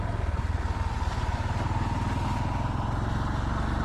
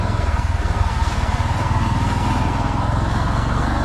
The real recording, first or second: first